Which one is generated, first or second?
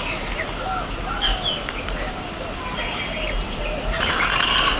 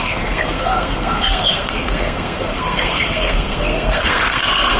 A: second